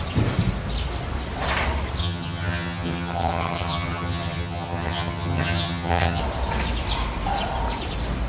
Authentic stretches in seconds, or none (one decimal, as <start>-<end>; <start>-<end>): 0.0-2.0; 6.2-8.3